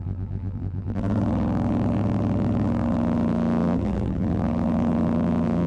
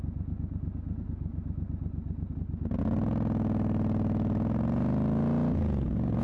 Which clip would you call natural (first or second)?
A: second